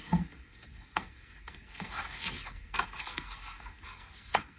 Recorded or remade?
remade